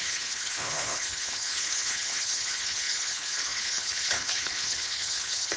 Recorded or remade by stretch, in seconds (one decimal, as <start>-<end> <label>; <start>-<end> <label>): 0.0-5.6 remade